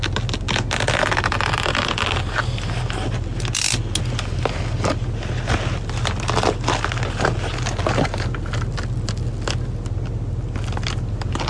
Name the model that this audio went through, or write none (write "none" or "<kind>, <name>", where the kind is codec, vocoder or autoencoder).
none